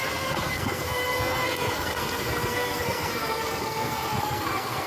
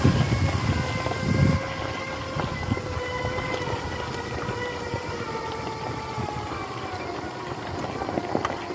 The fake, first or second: first